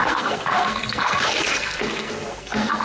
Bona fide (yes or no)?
no